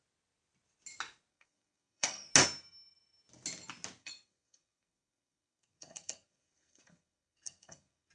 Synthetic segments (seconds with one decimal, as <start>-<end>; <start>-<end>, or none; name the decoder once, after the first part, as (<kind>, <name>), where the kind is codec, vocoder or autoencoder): 1.3-2.3 (codec, SNAC); 4.0-8.1